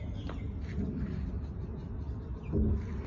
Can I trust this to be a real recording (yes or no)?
yes